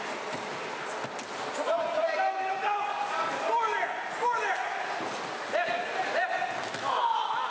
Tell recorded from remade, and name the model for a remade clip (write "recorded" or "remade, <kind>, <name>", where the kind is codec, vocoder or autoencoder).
recorded